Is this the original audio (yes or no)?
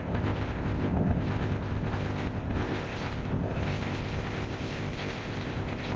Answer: no